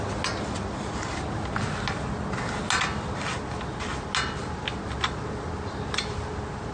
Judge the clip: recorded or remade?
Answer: recorded